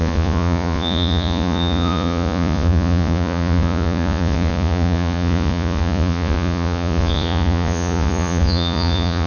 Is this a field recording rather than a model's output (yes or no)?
no